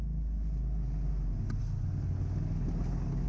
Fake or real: real